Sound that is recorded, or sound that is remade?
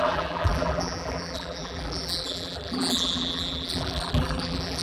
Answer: remade